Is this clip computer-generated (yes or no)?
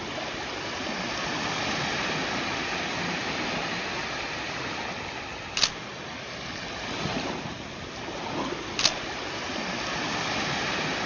no